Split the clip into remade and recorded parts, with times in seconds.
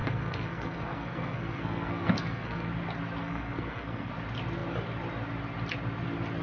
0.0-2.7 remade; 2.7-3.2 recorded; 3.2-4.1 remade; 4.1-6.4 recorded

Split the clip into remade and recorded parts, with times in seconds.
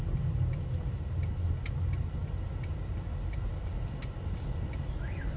0.0-5.4 recorded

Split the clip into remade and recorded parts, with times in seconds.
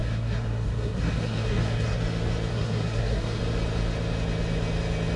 0.0-2.0 remade; 2.0-2.5 recorded; 2.5-3.4 remade; 3.4-5.2 recorded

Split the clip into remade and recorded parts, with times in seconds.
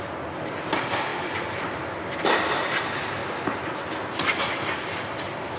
0.0-5.6 recorded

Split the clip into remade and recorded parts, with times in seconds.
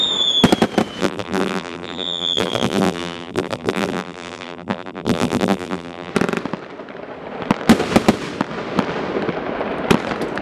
0.0-1.0 recorded; 1.0-6.1 remade; 6.1-10.4 recorded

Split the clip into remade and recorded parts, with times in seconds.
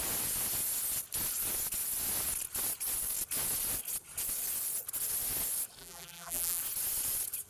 0.0-5.8 recorded; 5.8-6.6 remade; 6.6-7.5 recorded